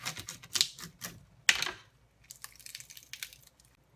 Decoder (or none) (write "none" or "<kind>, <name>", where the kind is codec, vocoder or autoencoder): none